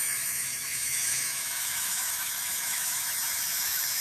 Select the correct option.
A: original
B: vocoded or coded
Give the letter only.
B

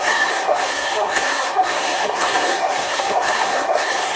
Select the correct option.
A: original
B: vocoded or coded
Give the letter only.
B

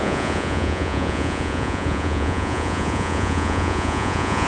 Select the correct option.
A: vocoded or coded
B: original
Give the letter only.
A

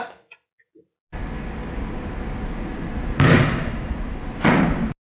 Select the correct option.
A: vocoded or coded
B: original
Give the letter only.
B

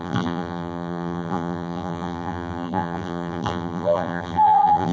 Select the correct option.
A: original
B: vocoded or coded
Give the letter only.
B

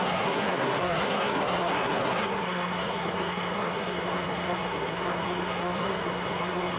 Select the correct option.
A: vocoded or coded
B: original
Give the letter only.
A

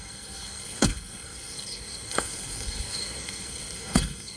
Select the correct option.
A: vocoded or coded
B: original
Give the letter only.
A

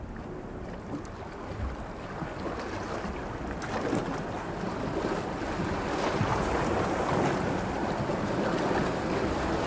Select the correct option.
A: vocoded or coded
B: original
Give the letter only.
B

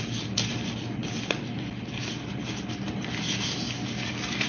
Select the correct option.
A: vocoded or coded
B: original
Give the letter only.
B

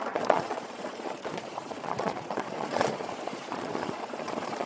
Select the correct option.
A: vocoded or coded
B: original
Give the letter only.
A